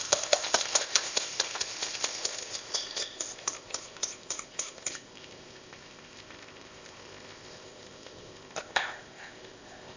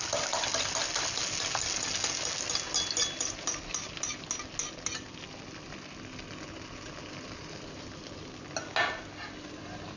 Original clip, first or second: second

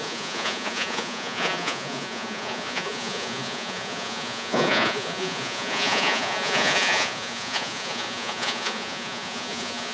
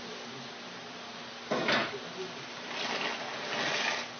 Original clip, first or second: second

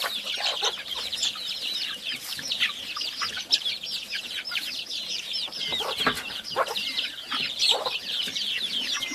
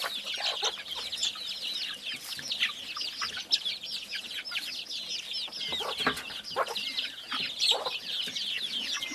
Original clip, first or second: second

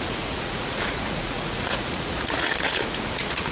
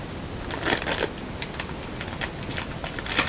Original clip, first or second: second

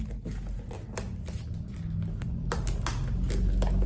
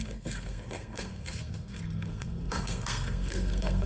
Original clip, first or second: first